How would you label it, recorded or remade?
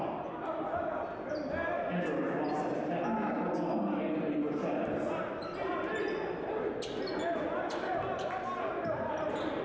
recorded